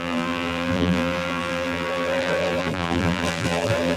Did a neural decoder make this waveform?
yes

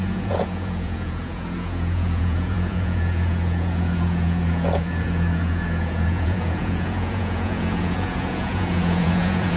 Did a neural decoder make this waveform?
yes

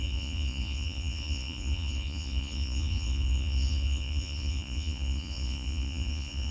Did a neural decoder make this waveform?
yes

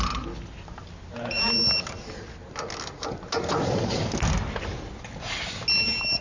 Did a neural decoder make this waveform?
no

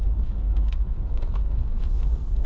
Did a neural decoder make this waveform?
yes